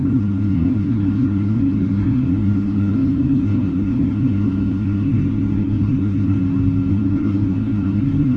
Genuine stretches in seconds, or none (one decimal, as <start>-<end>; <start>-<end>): 6.4-6.9